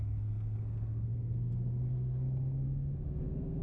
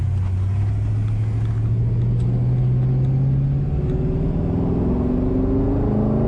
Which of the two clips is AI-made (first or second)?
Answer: first